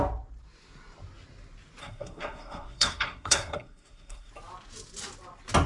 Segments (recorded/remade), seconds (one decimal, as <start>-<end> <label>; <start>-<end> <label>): 0.0-1.8 recorded; 1.8-4.3 remade; 4.3-5.7 recorded